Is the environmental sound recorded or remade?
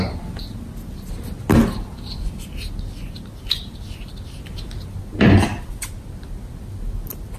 recorded